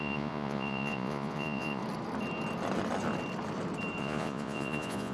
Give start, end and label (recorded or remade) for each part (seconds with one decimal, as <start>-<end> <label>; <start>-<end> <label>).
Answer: 0.0-1.8 remade; 1.8-4.0 recorded; 4.0-5.1 remade